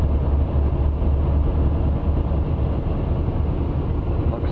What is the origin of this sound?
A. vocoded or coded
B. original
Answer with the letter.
B